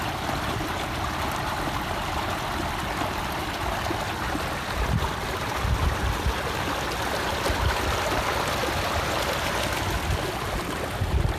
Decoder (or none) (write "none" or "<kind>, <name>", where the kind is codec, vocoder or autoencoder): none